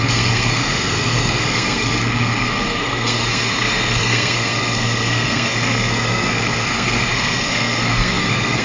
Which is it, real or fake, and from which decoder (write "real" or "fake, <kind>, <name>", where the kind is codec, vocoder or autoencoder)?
fake, codec, SNAC